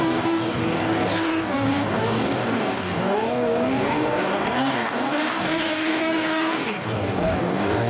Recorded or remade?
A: remade